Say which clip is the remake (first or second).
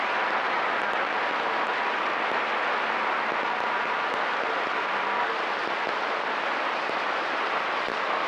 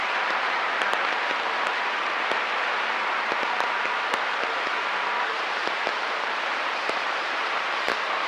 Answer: second